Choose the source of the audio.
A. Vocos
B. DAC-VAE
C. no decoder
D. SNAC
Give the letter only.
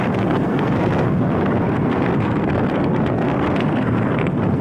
D